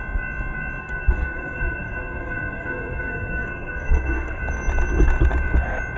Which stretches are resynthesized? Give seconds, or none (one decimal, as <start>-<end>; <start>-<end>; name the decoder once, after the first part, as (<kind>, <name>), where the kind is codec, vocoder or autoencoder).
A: 0.8-4.4 (codec, SNAC)